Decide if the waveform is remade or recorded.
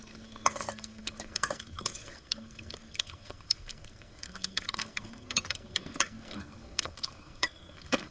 remade